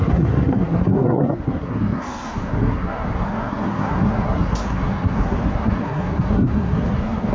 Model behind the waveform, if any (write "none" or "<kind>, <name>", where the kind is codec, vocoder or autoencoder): codec, SNAC